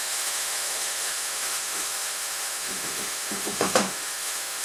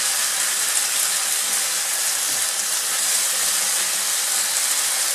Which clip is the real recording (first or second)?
second